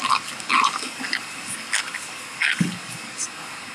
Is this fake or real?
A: fake